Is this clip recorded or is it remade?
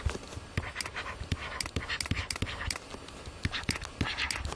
recorded